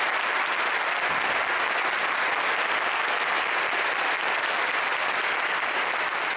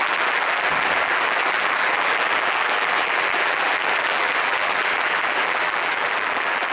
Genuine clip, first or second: first